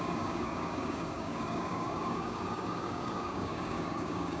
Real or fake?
fake